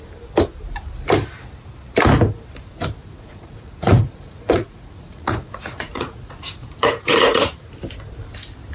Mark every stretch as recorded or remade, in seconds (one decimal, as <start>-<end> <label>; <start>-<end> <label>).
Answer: 0.0-3.0 recorded; 3.0-7.7 remade; 7.7-8.7 recorded

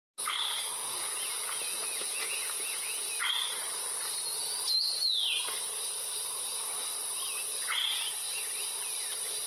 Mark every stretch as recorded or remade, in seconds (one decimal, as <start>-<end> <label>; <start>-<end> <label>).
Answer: 0.0-0.8 recorded; 0.8-3.1 remade; 3.1-4.4 recorded; 4.4-5.2 remade; 5.2-9.5 recorded